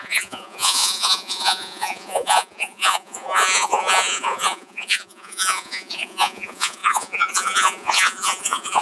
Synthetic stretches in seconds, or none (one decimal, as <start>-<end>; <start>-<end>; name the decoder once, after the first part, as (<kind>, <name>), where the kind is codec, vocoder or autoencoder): 0.0-8.8 (vocoder, Vocos)